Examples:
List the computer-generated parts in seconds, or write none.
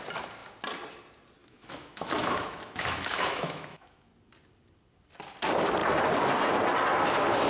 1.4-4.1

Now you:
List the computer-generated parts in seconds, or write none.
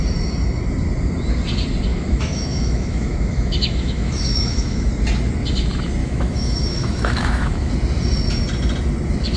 1.9-4.9; 6.0-7.7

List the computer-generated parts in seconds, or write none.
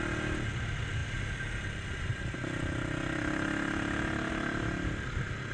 none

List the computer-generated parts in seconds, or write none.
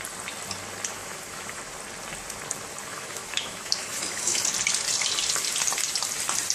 1.0-1.6; 2.9-4.4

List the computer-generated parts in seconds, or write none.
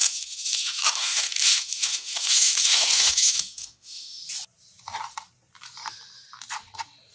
0.0-4.2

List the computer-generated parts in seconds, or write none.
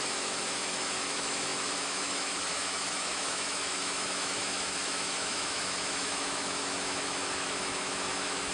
0.0-8.5